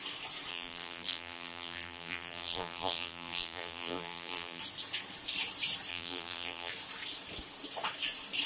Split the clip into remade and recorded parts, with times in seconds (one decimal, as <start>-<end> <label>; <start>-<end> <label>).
0.0-0.5 recorded; 0.5-4.6 remade; 4.6-5.9 recorded; 5.9-6.7 remade; 6.7-8.5 recorded